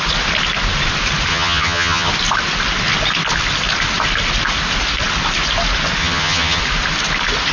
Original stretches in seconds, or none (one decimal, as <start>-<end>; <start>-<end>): 0.0-1.3; 2.1-6.0; 6.6-7.5